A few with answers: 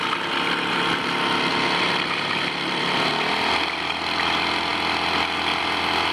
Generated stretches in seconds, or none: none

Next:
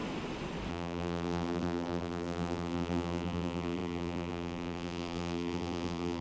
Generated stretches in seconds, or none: 0.7-6.2 (vocoder, BigVGAN v2)

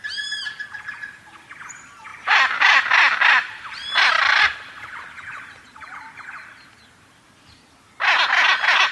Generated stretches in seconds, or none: 2.1-2.9 (vocoder, BigVGAN v2)

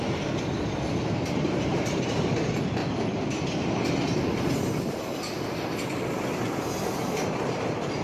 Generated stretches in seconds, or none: 0.0-2.8 (vocoder, BigVGAN v2); 6.9-8.0